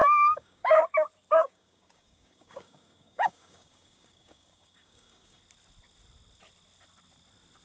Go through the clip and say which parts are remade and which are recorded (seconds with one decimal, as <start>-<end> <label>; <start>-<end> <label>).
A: 0.0-0.8 remade; 0.8-1.4 recorded; 1.4-5.4 remade; 5.4-7.6 recorded

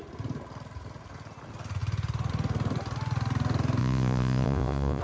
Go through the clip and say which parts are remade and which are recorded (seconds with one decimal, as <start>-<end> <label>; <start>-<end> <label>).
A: 0.0-3.8 recorded; 3.8-5.0 remade

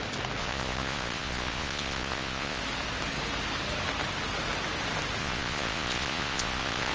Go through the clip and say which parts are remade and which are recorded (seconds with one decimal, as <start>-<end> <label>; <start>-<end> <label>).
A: 0.0-0.4 recorded; 0.4-2.6 remade; 2.6-5.2 recorded; 5.2-6.9 remade

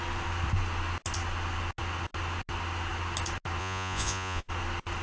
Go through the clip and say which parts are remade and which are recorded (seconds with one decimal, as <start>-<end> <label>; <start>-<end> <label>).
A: 0.0-3.6 recorded; 3.6-4.5 remade; 4.5-5.0 recorded

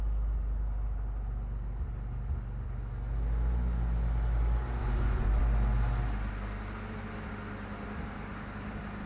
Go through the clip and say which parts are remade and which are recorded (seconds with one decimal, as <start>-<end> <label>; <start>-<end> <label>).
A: 0.0-4.8 recorded; 4.8-5.4 remade; 5.4-9.1 recorded